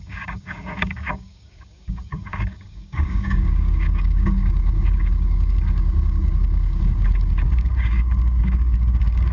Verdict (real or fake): fake